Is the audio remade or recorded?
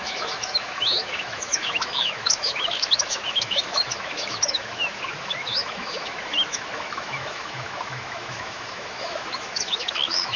remade